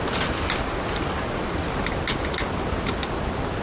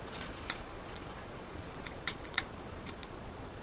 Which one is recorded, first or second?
first